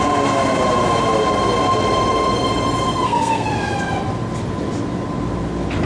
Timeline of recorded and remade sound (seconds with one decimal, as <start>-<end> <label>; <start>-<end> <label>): 0.0-2.9 recorded; 2.9-3.5 remade; 3.5-5.9 recorded